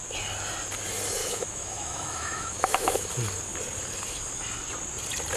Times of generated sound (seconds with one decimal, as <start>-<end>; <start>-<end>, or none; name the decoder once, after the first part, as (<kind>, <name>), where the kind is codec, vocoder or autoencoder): 1.2-3.1 (autoencoder, DAC-VAE)